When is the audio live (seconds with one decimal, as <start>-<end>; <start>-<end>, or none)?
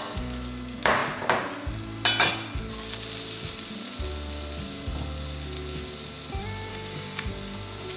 0.0-6.7; 7.3-8.0